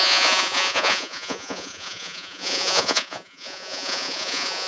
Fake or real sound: fake